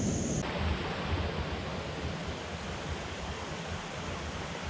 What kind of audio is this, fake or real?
real